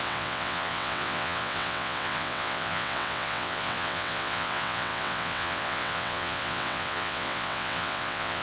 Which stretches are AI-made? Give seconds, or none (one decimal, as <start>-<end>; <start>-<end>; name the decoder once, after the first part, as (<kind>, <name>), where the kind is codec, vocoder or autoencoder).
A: 0.0-8.4 (vocoder, WaveNeXt)